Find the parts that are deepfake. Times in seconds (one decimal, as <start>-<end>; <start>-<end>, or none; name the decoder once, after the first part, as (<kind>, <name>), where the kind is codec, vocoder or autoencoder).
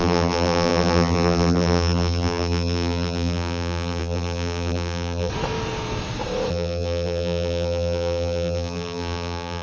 0.0-5.3 (vocoder, BigVGAN v2); 6.5-9.6